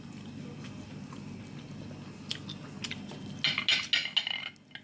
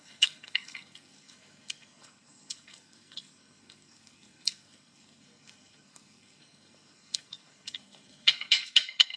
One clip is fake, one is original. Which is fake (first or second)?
second